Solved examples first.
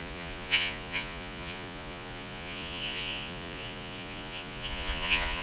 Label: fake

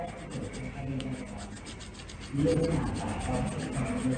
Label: real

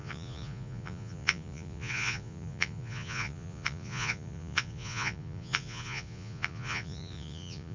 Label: fake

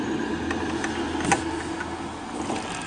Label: real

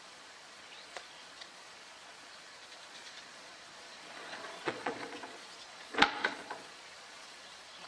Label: fake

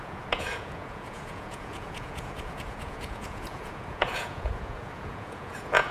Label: fake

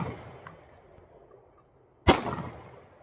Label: real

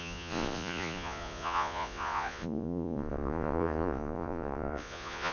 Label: fake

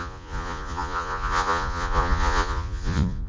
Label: fake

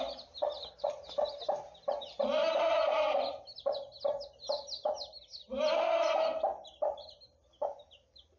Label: real